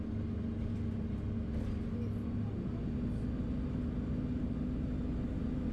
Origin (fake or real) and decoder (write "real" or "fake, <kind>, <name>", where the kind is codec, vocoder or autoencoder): real